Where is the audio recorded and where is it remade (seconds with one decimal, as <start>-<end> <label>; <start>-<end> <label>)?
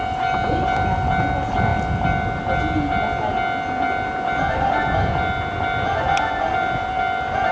0.0-7.5 recorded